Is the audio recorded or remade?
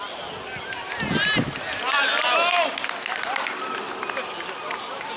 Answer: recorded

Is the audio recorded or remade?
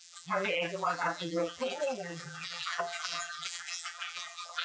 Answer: remade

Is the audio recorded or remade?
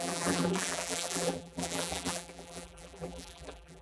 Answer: remade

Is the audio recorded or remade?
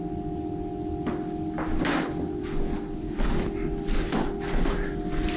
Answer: recorded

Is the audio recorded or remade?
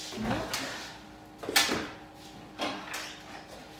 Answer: recorded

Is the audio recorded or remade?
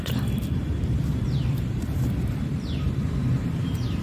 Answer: remade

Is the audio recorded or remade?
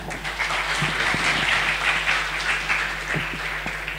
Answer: recorded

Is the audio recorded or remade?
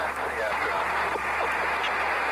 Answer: recorded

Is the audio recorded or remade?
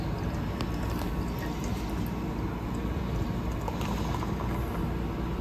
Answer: recorded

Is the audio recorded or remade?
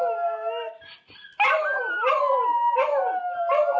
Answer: recorded